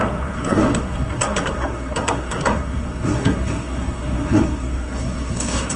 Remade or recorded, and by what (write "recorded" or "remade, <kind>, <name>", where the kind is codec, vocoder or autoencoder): remade, codec, SNAC